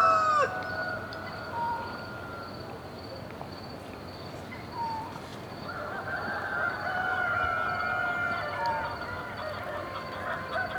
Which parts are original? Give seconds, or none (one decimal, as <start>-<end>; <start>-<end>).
0.0-10.8